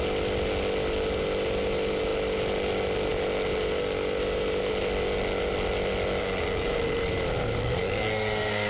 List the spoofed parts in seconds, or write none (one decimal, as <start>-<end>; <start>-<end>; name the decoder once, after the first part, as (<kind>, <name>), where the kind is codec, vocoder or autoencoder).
6.2-7.1 (codec, SNAC); 7.6-8.7